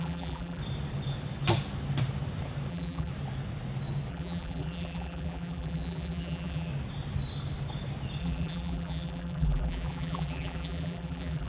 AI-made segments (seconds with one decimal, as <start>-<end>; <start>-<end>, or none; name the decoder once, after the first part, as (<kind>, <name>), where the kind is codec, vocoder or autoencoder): 0.0-0.6 (vocoder, BigVGAN v2); 2.7-3.1; 4.1-6.7; 8.2-11.5